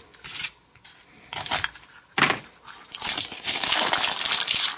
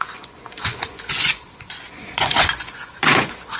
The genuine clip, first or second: first